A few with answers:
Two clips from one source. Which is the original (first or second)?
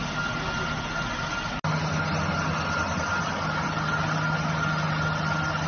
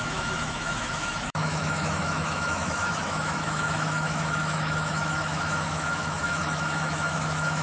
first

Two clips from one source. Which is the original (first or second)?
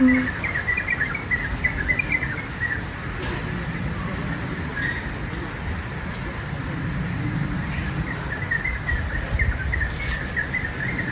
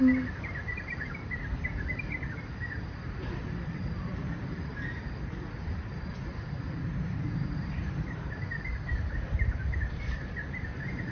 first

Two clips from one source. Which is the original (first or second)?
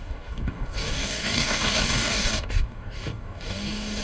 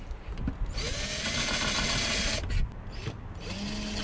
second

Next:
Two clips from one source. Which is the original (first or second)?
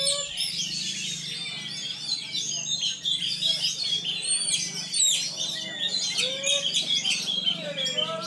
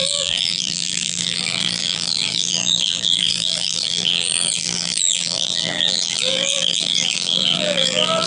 first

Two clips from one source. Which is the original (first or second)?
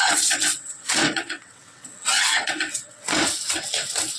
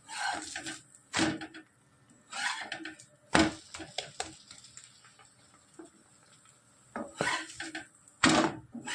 second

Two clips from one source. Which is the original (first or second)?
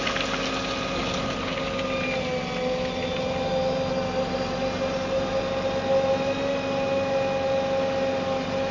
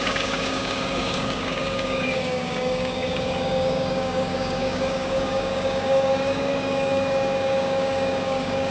first